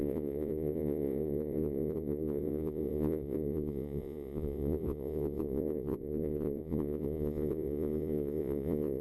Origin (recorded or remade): remade